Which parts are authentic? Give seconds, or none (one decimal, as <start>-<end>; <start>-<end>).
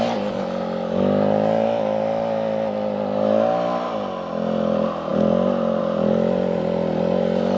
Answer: 0.0-7.6